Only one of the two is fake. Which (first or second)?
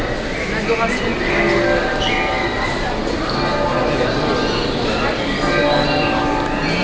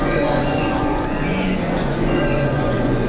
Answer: second